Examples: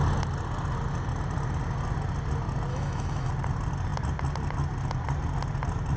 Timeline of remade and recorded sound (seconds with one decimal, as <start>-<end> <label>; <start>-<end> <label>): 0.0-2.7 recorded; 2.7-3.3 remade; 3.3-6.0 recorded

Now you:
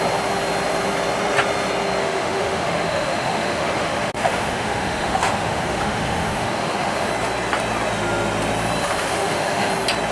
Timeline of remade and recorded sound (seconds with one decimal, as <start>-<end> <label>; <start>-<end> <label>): 0.0-2.0 recorded; 2.0-7.1 remade; 7.1-8.8 recorded; 8.8-9.7 remade; 9.7-10.1 recorded

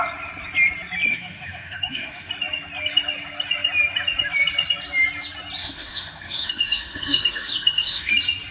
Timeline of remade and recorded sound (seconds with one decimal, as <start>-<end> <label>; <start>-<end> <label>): 0.0-1.1 recorded; 1.1-2.3 remade; 2.3-5.6 recorded; 5.6-8.1 remade; 8.1-8.5 recorded

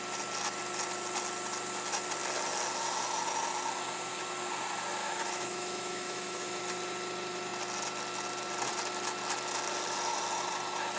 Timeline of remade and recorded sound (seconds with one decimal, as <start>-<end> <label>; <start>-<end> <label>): 0.0-5.0 recorded; 5.0-6.6 remade; 6.6-11.0 recorded

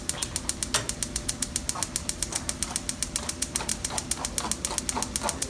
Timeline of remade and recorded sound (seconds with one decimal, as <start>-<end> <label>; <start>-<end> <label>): 0.0-5.5 recorded